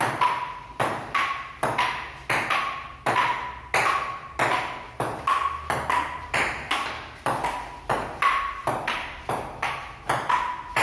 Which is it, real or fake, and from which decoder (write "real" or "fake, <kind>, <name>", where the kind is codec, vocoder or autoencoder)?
real